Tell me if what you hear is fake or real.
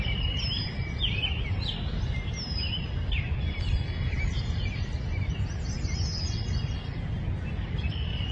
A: real